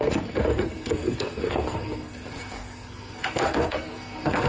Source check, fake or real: fake